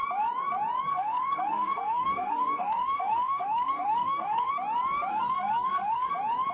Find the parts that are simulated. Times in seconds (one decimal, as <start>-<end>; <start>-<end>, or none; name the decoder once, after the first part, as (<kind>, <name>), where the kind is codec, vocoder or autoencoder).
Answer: 0.9-4.5 (codec, SNAC); 5.1-6.1